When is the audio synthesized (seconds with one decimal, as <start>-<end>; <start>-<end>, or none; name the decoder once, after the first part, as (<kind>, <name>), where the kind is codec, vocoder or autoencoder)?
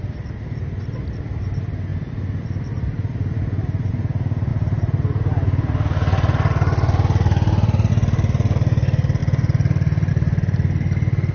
none